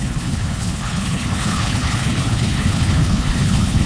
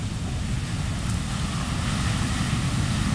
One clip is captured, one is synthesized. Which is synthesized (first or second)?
first